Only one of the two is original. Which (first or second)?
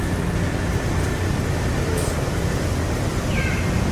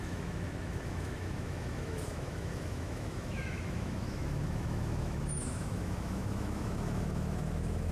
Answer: first